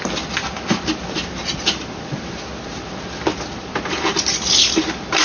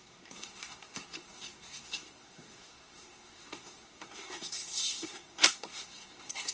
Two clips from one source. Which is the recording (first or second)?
first